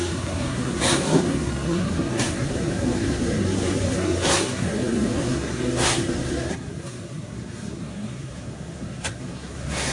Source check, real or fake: fake